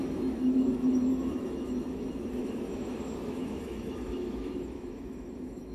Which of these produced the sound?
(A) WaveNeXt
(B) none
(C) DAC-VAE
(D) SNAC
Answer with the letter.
C